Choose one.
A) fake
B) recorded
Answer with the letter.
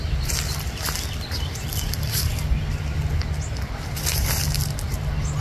B